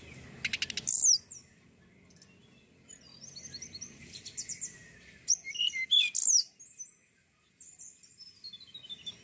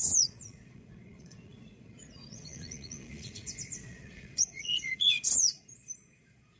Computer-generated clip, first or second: second